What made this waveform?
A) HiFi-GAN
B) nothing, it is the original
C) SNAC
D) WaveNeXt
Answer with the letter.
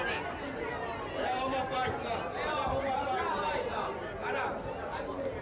B